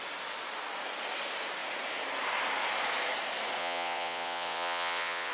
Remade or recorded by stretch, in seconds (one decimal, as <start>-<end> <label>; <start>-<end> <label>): 0.0-3.6 recorded; 3.6-5.3 remade